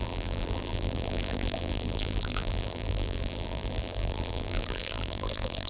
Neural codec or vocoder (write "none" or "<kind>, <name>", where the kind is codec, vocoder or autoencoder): vocoder, BigVGAN v2